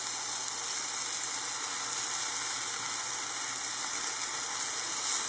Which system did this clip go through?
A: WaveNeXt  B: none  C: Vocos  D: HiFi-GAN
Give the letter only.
B